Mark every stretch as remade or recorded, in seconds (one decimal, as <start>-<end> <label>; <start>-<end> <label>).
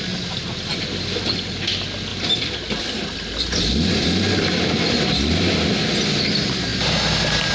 0.0-7.5 recorded